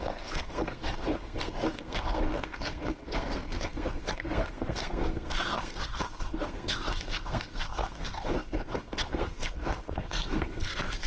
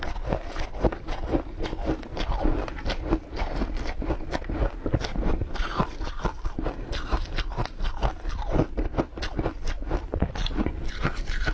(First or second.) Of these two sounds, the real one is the second